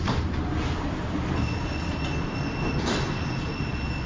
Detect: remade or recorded recorded